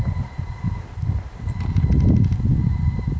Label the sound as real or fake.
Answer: real